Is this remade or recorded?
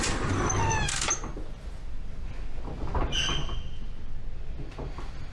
recorded